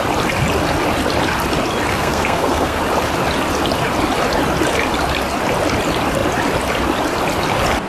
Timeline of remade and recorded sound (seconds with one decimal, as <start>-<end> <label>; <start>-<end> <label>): 0.0-1.9 recorded; 1.9-2.8 remade; 2.8-7.9 recorded